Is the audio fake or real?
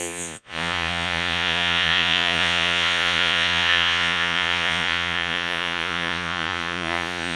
fake